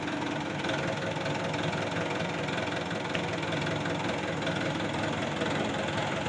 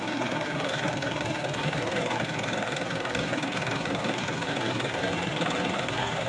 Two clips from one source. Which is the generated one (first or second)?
second